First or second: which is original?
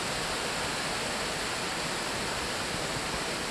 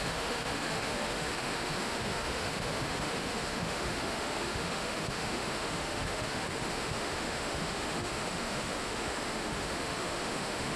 first